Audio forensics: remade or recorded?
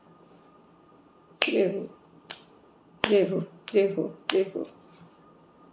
recorded